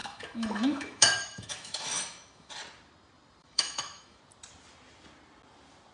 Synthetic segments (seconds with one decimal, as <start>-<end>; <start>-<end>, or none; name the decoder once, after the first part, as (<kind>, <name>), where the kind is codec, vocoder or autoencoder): 0.0-2.5 (autoencoder, DAC-VAE); 3.4-4.2